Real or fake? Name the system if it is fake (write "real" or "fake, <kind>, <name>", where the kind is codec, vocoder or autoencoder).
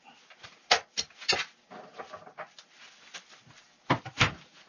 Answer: real